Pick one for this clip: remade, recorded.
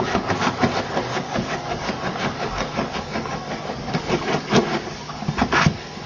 remade